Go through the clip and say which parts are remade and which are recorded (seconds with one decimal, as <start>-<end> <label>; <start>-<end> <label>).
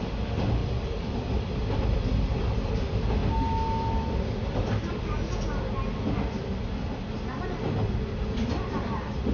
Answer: 0.0-0.6 recorded; 0.6-1.4 remade; 1.4-9.3 recorded